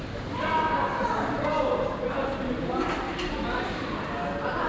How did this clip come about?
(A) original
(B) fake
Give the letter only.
A